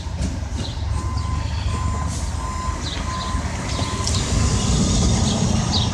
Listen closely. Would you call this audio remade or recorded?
recorded